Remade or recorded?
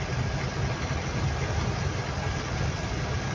recorded